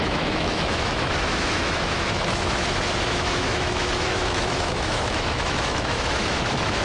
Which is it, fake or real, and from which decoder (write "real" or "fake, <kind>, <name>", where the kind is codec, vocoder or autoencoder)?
fake, autoencoder, DAC-VAE